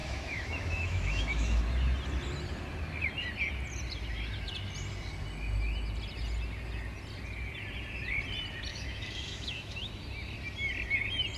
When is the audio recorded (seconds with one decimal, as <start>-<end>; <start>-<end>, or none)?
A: 1.6-8.7; 9.9-11.4